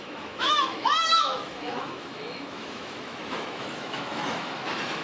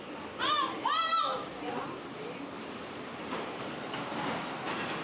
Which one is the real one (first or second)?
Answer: second